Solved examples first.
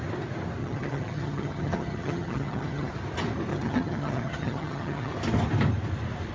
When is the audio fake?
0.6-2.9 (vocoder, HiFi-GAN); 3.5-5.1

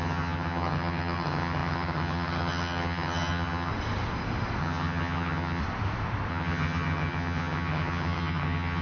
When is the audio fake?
0.0-3.7 (vocoder, HiFi-GAN); 4.6-5.6; 6.3-8.8

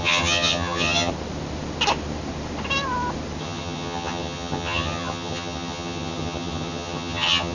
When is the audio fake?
0.0-1.1 (vocoder, HiFi-GAN); 3.4-7.5

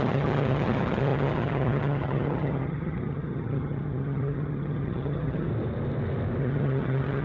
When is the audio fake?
0.0-5.5 (vocoder, HiFi-GAN); 6.4-7.2

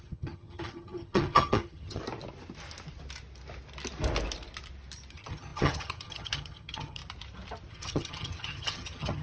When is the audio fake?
0.0-2.0 (vocoder, HiFi-GAN); 5.1-7.0; 7.7-9.2

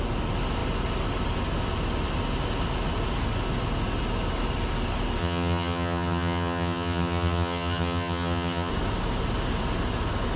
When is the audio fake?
5.2-8.7 (vocoder, HiFi-GAN)